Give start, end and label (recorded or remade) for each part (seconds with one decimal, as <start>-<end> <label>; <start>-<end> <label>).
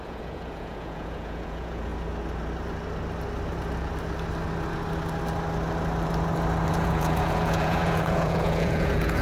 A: 0.0-1.9 remade; 1.9-6.7 recorded; 6.7-9.2 remade